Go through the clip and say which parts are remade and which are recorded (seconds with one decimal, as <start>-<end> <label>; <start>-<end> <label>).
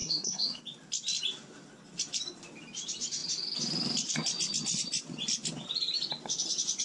0.0-0.6 remade; 0.6-6.8 recorded